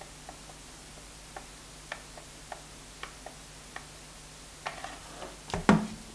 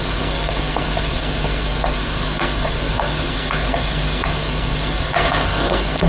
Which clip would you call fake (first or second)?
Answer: second